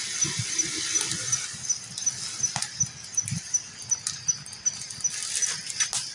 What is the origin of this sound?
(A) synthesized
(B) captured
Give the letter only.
B